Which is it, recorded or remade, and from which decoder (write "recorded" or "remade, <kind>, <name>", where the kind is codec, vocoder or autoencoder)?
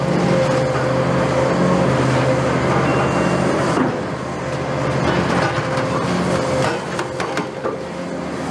recorded